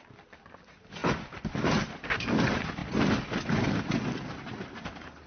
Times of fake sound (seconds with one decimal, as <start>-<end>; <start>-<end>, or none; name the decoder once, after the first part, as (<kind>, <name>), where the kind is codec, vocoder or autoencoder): 0.0-2.8 (vocoder, BigVGAN v2); 3.6-5.3